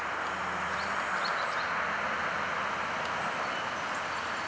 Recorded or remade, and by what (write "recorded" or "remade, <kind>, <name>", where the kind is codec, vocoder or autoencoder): recorded